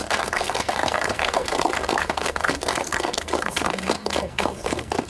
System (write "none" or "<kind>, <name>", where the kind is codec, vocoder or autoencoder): codec, SNAC